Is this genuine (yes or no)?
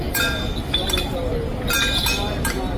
yes